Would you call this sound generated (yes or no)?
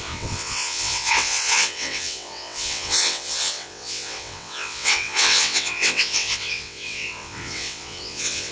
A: yes